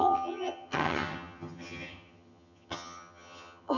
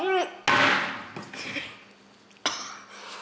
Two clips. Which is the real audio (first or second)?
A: second